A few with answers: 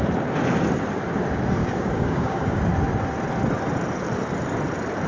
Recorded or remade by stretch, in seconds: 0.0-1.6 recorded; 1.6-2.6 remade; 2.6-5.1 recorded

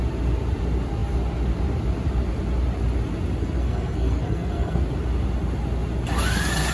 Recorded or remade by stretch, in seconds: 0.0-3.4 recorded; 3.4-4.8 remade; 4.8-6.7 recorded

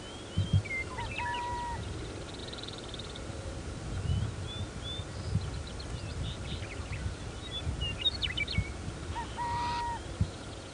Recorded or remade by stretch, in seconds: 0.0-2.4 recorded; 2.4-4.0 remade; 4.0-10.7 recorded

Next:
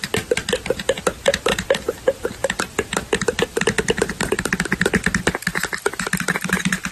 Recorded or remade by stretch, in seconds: 0.0-6.9 recorded